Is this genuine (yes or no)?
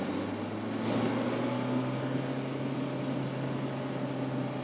yes